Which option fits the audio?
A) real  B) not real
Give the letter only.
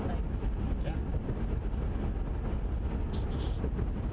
A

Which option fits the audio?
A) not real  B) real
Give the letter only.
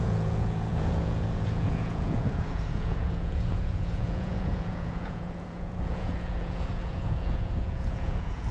A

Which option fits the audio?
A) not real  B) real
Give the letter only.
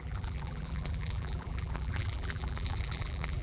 A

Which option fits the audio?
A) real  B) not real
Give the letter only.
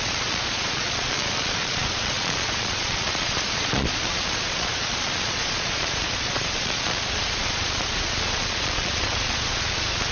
B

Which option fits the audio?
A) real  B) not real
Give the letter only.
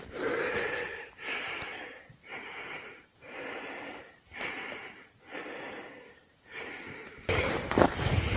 B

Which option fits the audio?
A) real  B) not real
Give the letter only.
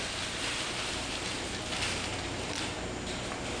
A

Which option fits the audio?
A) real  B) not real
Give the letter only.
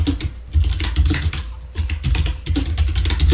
A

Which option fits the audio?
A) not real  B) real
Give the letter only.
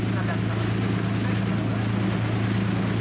B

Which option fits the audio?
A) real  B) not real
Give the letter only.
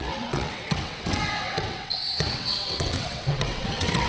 B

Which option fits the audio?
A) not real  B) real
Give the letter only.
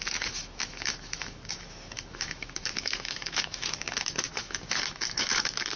A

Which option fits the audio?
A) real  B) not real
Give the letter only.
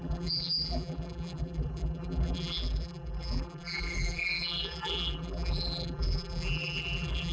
B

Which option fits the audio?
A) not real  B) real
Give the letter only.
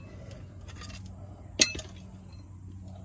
B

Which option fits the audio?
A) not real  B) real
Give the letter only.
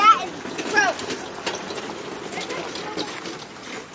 B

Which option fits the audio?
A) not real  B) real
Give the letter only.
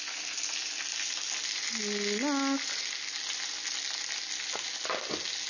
B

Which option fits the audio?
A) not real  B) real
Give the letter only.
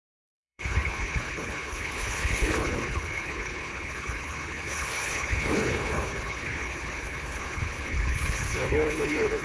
A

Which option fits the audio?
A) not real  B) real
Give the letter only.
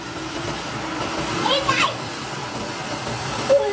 A